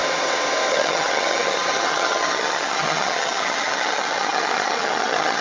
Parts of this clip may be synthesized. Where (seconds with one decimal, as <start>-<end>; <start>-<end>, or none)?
0.7-5.4

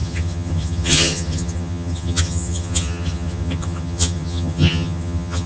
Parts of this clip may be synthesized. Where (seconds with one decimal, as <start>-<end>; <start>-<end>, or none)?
0.0-5.5

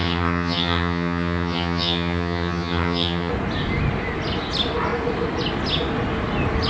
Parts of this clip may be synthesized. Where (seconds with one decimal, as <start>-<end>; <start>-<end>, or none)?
0.0-3.3

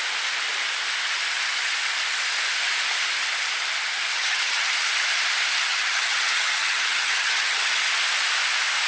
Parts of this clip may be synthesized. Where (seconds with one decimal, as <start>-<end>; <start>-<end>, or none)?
4.1-4.7; 5.7-7.8

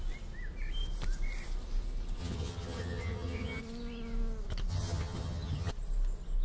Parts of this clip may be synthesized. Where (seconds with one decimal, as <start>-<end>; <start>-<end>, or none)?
2.2-3.6; 4.7-5.7

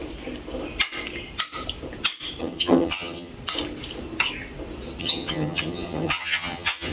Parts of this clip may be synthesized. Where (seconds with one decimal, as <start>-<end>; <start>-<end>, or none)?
2.4-3.3; 5.0-6.9